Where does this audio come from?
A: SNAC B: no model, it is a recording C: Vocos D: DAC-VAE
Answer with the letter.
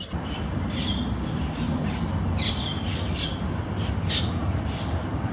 B